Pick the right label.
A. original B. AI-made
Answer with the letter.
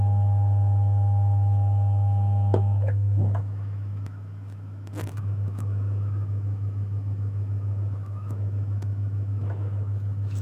B